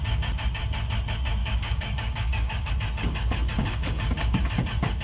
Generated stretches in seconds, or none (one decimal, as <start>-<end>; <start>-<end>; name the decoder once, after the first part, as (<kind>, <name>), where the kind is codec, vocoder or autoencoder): 1.4-2.7 (codec, DAC); 3.6-4.4